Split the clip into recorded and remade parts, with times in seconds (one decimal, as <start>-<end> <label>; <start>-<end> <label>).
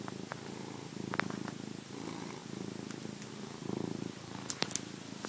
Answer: 0.0-5.3 recorded